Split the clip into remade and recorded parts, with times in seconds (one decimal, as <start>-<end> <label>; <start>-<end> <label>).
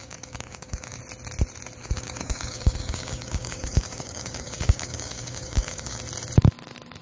0.0-1.0 remade; 1.0-1.8 recorded; 1.8-6.0 remade; 6.0-7.0 recorded